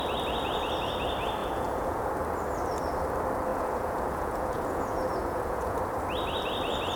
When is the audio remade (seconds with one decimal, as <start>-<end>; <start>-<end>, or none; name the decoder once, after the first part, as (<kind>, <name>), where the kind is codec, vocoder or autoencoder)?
1.4-2.1 (vocoder, Vocos); 3.5-5.8